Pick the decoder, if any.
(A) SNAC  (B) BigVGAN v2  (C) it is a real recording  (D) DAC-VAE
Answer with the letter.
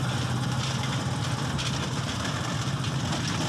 C